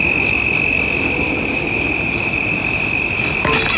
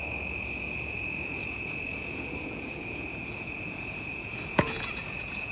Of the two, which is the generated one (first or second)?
second